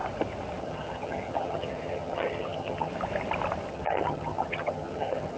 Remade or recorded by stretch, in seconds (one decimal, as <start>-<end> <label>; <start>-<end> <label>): 0.0-0.6 recorded; 0.6-2.9 remade; 2.9-3.7 recorded; 3.7-5.4 remade